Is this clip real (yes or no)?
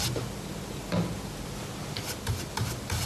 yes